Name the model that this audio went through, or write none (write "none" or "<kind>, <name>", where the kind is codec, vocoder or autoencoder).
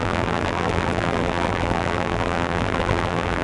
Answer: vocoder, BigVGAN v2